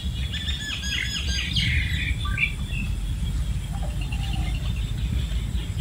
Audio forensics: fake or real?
real